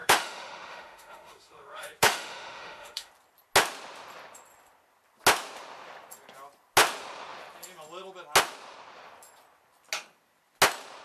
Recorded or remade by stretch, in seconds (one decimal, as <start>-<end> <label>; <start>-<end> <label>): 0.0-3.1 remade; 3.1-11.0 recorded